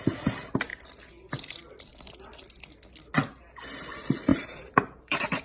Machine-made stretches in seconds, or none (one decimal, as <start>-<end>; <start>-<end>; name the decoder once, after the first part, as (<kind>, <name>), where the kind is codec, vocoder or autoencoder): 4.3-5.4 (vocoder, BigVGAN v2)